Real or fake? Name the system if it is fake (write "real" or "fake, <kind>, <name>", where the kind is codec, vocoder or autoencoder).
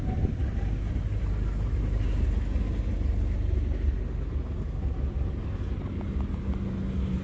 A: real